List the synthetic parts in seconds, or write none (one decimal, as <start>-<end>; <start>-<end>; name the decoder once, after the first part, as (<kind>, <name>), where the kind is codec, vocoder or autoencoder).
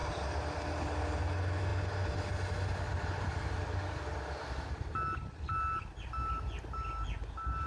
none